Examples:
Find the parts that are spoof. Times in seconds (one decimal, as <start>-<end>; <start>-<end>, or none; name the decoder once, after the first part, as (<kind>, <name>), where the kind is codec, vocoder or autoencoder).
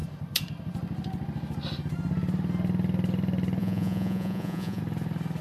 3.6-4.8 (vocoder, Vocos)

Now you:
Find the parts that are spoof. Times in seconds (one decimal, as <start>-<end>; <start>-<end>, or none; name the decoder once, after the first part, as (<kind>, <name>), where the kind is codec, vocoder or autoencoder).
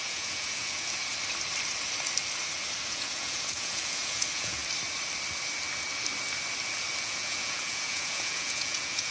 0.0-1.0 (vocoder, Vocos); 2.9-4.6; 7.0-9.1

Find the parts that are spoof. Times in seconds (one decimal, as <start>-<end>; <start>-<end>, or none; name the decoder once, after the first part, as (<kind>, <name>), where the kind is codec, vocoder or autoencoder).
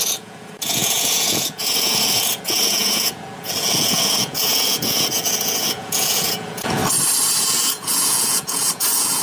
0.0-6.8 (vocoder, Vocos); 7.4-9.2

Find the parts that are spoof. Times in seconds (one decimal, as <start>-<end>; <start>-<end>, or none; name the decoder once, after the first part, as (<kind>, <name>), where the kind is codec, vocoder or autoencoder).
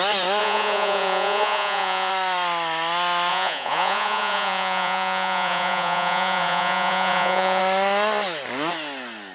0.4-2.1 (vocoder, Vocos); 3.3-7.6